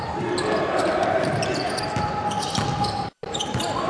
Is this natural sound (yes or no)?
no